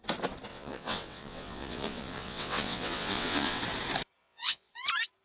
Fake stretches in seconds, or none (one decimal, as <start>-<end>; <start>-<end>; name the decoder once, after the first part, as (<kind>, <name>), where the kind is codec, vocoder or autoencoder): 0.5-3.6 (vocoder, WaveNeXt); 4.2-4.7